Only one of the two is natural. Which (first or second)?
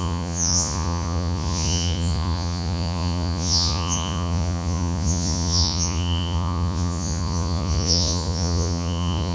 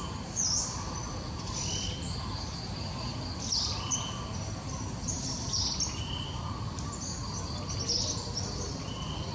second